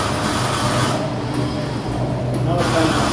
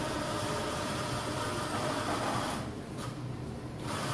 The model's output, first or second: second